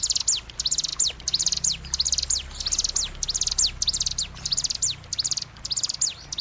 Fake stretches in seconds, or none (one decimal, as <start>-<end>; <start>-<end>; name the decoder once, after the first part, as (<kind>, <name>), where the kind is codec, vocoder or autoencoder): none